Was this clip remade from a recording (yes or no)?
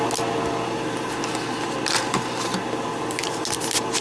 no